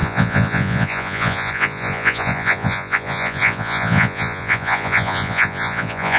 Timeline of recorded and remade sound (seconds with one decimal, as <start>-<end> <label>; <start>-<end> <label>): 0.0-6.2 remade